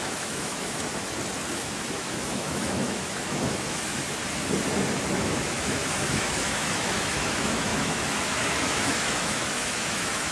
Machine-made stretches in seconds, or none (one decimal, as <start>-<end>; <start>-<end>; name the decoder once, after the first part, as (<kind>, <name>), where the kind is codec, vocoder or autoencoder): 0.0-0.9 (autoencoder, DAC-VAE); 1.5-4.2; 5.2-10.3